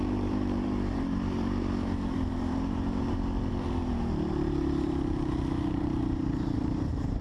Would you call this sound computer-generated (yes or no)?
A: yes